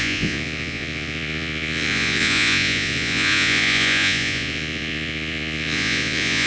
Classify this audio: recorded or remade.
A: remade